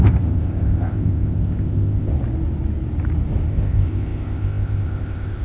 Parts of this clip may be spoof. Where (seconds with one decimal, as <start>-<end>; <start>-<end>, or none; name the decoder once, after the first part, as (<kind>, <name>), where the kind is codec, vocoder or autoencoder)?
0.0-2.1 (codec, ZipCodec); 3.5-5.4